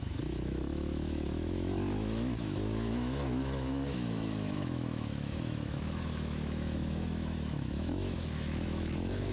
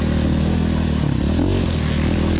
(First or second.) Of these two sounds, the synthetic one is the first